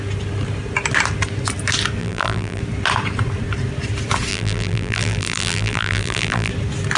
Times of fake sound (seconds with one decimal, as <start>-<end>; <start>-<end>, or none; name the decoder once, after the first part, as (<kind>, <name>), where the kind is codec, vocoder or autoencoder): 2.0-2.6 (vocoder, BigVGAN v2); 4.3-6.5